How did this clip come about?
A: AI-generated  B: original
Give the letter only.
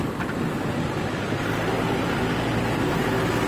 B